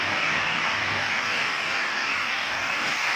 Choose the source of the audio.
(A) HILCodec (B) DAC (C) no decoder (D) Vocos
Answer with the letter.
B